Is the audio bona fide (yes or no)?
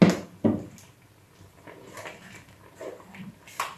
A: yes